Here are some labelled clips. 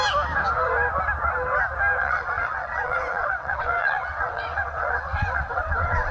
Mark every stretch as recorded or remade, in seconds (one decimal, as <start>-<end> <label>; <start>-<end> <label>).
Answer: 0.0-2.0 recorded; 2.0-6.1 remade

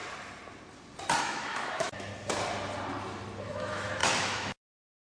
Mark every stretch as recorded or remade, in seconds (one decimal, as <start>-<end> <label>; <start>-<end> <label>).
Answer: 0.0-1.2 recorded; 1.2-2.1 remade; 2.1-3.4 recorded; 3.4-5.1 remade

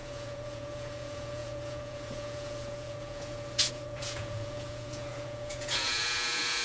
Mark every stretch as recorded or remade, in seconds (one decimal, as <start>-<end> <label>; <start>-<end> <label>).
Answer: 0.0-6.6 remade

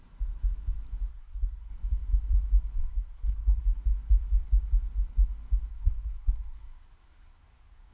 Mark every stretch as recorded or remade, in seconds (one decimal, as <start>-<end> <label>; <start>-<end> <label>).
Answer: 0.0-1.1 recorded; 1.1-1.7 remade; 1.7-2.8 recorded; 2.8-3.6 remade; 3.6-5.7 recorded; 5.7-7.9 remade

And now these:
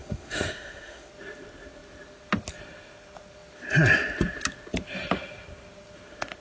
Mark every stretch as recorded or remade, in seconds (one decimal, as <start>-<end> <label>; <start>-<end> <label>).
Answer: 0.0-1.1 remade; 1.1-6.4 recorded

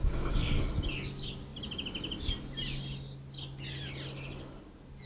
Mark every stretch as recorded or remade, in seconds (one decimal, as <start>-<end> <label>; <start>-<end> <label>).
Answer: 0.0-0.6 remade; 0.6-5.1 recorded

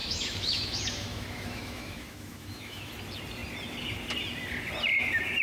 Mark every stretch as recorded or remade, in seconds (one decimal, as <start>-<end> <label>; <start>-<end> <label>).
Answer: 0.0-2.9 remade; 2.9-5.4 recorded